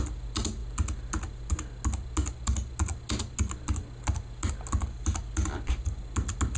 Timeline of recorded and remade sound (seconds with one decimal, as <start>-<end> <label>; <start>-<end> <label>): 0.0-6.6 recorded